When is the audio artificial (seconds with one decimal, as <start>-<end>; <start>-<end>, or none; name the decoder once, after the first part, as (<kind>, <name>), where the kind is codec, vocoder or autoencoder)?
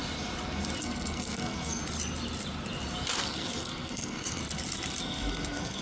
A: 0.8-1.8 (codec, SNAC); 3.2-4.4; 5.0-5.8